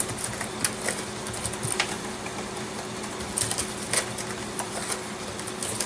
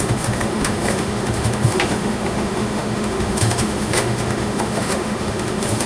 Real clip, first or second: first